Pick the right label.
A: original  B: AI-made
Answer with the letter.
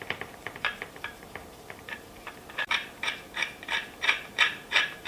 B